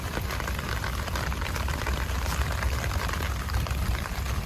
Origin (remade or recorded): remade